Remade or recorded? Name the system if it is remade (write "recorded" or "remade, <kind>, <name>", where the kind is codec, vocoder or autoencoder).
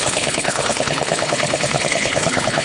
remade, codec, HILCodec